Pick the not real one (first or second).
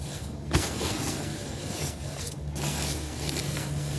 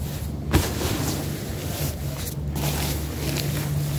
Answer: first